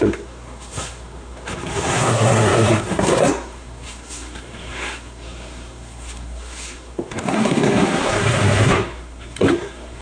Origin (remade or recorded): remade